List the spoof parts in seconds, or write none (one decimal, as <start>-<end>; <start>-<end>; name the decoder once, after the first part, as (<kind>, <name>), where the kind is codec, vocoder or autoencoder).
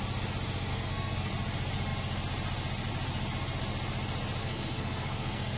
0.7-1.3 (codec, SNAC); 4.4-5.6